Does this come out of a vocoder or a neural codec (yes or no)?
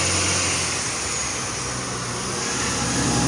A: no